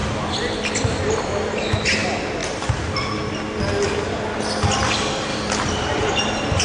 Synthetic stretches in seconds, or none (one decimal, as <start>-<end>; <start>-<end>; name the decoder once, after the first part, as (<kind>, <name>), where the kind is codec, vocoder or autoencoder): 2.4-3.0 (vocoder, BigVGAN v2); 5.3-6.6